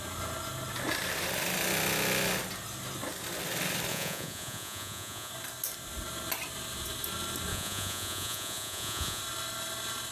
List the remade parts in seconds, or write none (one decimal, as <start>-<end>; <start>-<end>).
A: 3.9-5.3; 7.5-9.2

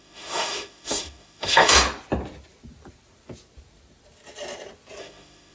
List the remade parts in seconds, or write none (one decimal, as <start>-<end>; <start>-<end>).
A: 0.0-1.7; 5.0-5.5